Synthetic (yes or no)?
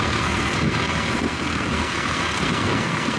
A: yes